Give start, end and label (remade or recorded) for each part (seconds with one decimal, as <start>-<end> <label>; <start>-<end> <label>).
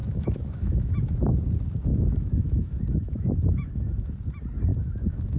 0.0-0.9 remade; 0.9-1.9 recorded; 1.9-4.1 remade; 4.1-4.7 recorded; 4.7-5.4 remade